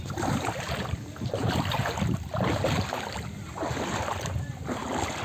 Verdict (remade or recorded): recorded